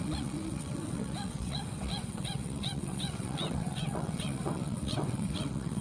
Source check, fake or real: fake